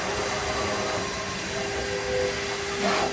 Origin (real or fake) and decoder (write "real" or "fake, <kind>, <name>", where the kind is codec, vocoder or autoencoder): real